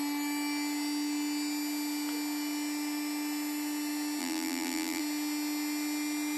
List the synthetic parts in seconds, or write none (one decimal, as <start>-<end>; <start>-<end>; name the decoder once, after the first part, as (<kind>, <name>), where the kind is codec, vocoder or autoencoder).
4.2-5.0 (vocoder, BigVGAN v2)